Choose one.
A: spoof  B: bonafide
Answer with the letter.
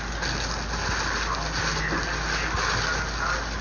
B